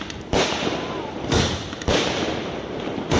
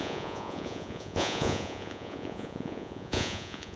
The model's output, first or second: second